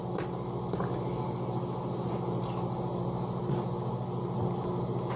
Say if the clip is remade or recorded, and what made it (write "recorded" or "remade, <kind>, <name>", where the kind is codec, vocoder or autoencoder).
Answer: recorded